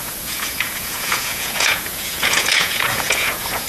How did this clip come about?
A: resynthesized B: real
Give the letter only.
A